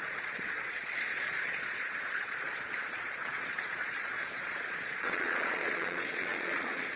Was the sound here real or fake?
fake